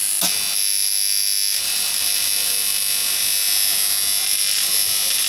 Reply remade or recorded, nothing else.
recorded